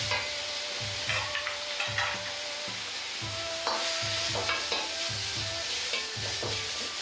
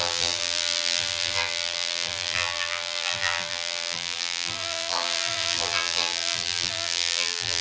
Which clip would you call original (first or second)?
first